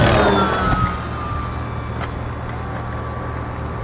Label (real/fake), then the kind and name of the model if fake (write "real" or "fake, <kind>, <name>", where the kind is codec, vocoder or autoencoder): real